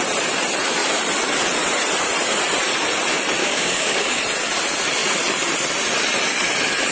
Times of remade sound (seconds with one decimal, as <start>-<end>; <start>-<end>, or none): 3.4-4.2